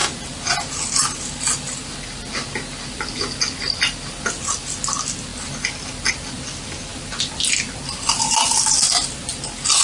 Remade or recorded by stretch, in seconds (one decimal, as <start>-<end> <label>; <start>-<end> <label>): 0.0-9.8 recorded